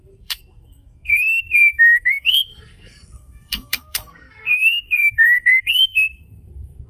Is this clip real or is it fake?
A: fake